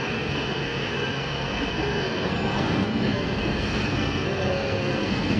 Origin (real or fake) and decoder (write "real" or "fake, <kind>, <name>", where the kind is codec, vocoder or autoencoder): fake, codec, SNAC